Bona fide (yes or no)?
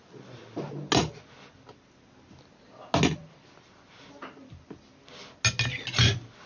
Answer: yes